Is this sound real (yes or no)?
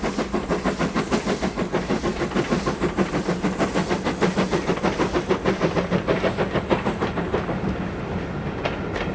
yes